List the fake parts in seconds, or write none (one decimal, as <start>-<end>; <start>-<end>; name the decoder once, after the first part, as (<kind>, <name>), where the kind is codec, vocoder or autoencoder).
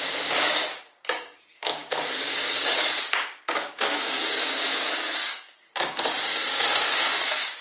0.0-7.6 (codec, DAC)